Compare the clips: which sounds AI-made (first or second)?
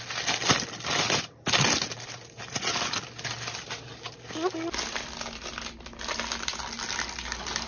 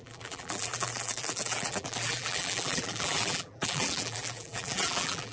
second